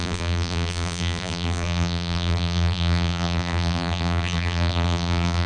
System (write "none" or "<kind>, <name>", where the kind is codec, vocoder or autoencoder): vocoder, BigVGAN v2